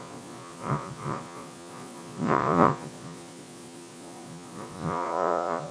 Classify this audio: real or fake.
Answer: fake